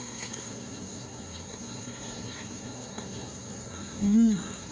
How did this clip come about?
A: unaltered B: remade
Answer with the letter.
B